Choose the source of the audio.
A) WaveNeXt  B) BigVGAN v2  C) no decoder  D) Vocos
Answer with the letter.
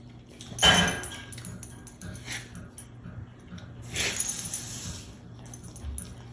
C